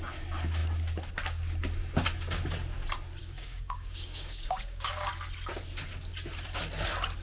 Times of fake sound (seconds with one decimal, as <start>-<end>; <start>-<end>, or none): 3.2-5.1